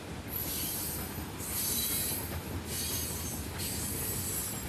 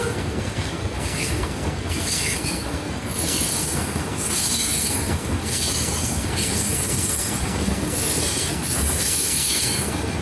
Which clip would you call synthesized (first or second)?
second